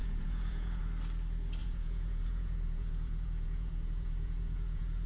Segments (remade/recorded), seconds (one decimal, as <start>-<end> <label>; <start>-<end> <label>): 0.0-0.8 remade; 0.8-1.6 recorded; 1.6-5.1 remade